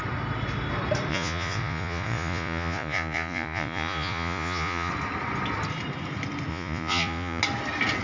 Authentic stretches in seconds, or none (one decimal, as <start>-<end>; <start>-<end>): 0.0-1.1; 4.9-6.5; 7.4-8.0